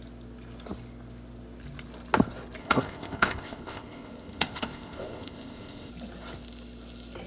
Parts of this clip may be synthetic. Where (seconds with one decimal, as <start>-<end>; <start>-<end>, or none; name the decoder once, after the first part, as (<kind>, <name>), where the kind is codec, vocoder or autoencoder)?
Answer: 2.6-5.9 (codec, ZipCodec)